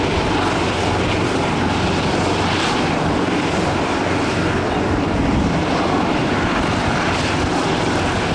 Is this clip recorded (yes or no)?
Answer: no